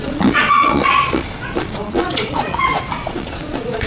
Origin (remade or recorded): remade